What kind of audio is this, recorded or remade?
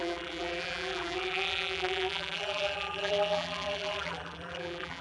remade